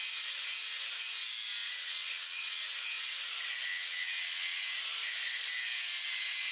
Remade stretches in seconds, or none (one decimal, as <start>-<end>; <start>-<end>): 1.6-2.6; 3.7-4.6